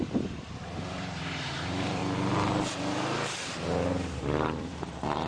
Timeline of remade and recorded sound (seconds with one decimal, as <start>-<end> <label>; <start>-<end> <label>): 0.0-2.0 remade; 2.0-4.5 recorded; 4.5-5.3 remade